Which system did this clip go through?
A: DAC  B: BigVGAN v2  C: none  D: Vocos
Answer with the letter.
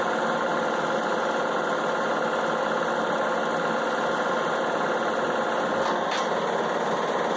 C